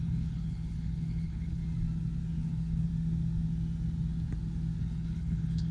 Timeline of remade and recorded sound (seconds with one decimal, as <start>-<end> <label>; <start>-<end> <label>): 0.0-1.6 remade; 1.6-2.4 recorded; 2.4-2.9 remade; 2.9-4.8 recorded; 4.8-5.7 remade